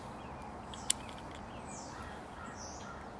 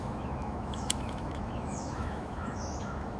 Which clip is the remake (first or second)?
second